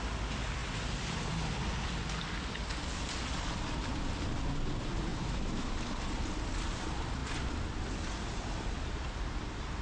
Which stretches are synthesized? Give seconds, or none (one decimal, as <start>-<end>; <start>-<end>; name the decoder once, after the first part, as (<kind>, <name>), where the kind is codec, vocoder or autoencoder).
5.1-5.7 (autoencoder, DAC-VAE)